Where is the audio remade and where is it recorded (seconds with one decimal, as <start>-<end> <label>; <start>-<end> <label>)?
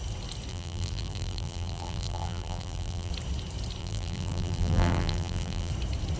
0.0-0.5 recorded; 0.5-3.1 remade; 3.1-3.8 recorded; 3.8-5.7 remade; 5.7-6.2 recorded